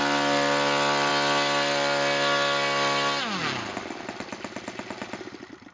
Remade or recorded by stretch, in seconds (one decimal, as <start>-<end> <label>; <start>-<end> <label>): 0.0-5.7 recorded